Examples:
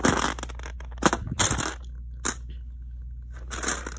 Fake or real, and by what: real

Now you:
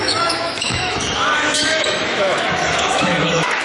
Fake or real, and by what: fake, autoencoder, DAC-VAE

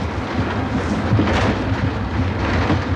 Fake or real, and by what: real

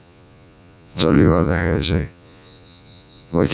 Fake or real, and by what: fake, vocoder, Vocos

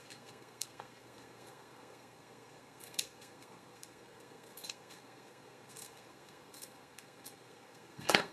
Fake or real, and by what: fake, codec, SNAC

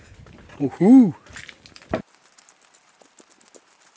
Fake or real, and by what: real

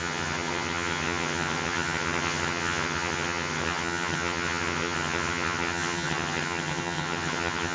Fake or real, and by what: fake, vocoder, HiFi-GAN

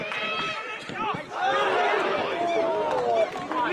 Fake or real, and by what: real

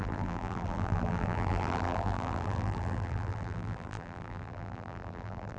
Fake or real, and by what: fake, vocoder, BigVGAN v2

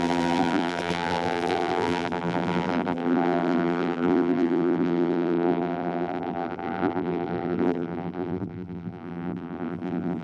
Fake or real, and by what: fake, vocoder, BigVGAN v2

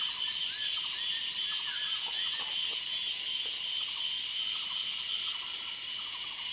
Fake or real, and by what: real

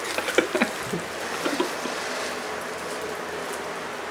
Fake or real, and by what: real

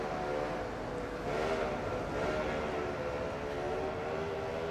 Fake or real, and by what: real